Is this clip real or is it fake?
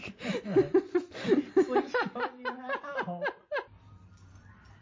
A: real